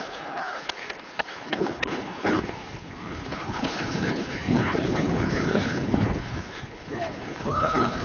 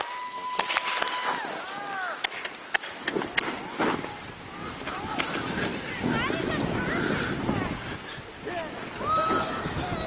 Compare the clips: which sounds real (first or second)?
second